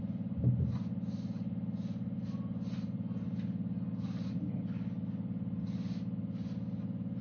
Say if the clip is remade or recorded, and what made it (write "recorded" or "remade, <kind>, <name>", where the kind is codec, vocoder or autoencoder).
recorded